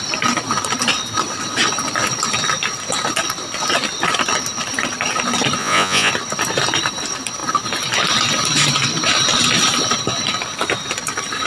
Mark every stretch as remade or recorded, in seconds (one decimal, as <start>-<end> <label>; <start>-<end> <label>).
0.0-5.6 recorded; 5.6-6.1 remade; 6.1-11.5 recorded